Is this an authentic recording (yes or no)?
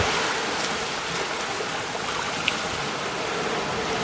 yes